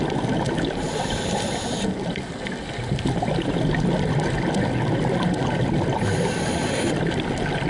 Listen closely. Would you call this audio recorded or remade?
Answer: recorded